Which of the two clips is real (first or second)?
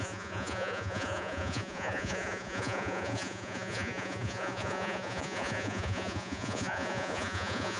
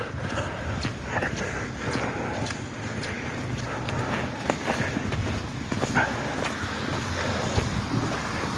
second